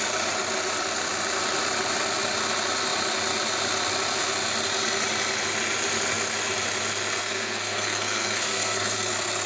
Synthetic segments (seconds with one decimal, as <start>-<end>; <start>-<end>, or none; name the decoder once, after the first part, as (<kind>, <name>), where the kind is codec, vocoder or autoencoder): 7.2-9.1 (codec, SNAC)